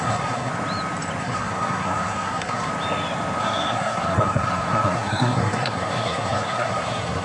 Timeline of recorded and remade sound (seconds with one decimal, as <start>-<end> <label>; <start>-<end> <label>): 0.0-0.5 remade; 0.5-1.2 recorded; 1.2-2.7 remade; 2.7-3.4 recorded; 3.4-7.2 remade

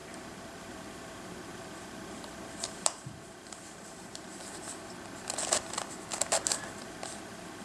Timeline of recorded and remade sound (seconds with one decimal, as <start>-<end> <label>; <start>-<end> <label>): 0.0-4.4 remade; 4.4-7.6 recorded

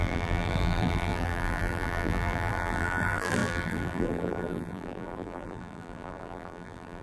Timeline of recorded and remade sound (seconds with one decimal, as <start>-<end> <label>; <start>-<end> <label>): 0.0-7.0 remade

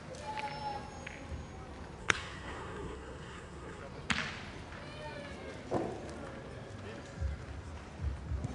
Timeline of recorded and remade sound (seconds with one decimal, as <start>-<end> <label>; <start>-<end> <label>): 0.0-2.0 recorded; 2.0-3.8 remade; 3.8-8.5 recorded

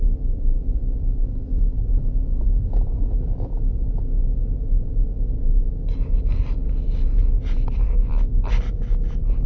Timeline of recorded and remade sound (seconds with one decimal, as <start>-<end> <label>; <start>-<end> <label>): 0.0-2.4 remade; 2.4-9.5 recorded